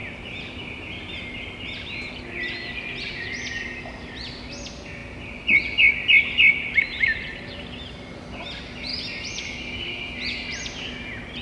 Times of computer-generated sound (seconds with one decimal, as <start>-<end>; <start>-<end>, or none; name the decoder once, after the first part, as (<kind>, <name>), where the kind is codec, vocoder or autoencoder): none